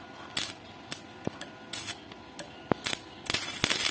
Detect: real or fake real